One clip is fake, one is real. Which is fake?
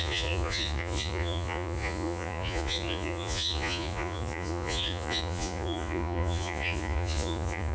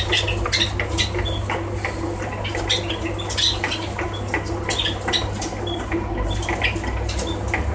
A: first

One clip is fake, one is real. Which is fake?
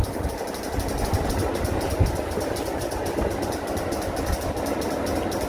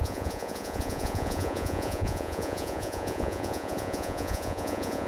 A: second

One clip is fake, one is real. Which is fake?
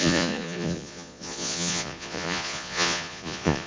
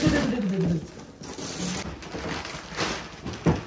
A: first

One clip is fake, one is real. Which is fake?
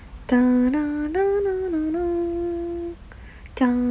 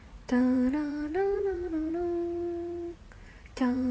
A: second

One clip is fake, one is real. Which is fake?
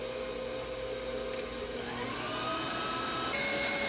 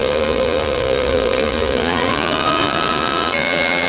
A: second